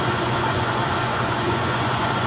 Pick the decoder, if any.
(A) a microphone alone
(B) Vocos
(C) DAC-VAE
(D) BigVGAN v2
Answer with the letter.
B